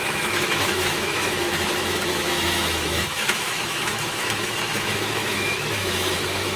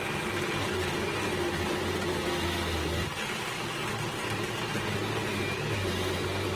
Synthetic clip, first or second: first